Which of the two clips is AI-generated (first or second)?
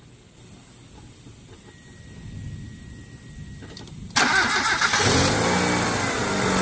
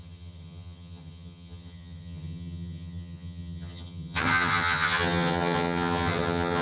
second